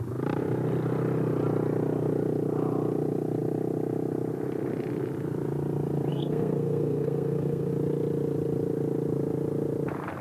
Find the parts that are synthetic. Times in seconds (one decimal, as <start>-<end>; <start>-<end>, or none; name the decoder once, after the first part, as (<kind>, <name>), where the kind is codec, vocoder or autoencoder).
6.1-7.7 (codec, SNAC)